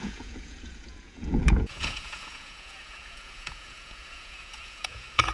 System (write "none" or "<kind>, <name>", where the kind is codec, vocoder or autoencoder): vocoder, Vocos